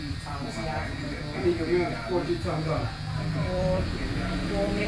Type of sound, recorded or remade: remade